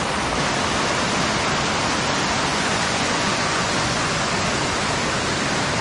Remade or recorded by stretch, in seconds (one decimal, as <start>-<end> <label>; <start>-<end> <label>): 0.0-2.5 recorded; 2.5-4.3 remade; 4.3-5.8 recorded